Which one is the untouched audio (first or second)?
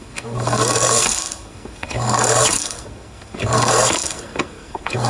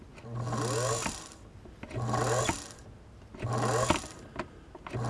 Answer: second